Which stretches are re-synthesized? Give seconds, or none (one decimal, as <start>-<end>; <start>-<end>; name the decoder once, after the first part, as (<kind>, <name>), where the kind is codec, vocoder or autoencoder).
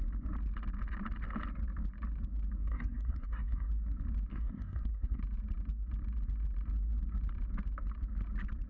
2.6-3.7 (codec, SNAC); 4.3-5.2